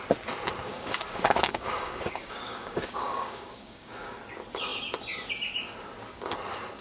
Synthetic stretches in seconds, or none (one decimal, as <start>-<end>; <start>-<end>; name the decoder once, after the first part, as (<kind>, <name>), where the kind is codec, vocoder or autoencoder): 0.7-4.2 (codec, DAC)